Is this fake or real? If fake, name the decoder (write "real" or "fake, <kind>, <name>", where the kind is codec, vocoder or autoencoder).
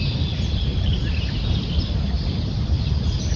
real